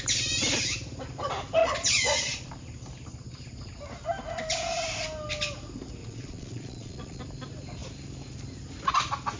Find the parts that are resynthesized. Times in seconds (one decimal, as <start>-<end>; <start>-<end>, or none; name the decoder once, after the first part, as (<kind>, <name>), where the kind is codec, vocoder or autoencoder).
1.6-2.5 (vocoder, Vocos); 6.0-7.2

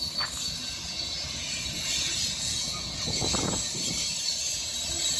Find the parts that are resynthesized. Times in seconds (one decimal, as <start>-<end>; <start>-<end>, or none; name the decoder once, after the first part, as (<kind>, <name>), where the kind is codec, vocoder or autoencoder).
0.6-3.7 (vocoder, Vocos)